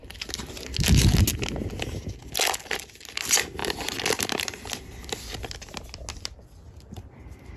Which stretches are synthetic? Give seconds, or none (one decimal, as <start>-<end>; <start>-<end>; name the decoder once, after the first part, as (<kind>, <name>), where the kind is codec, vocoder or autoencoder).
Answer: none